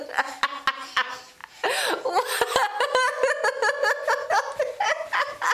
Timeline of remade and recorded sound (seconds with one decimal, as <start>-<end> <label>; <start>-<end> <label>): 0.0-4.5 recorded; 4.5-5.5 remade